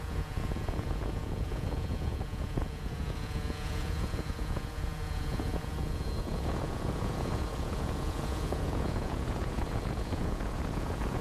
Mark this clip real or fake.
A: fake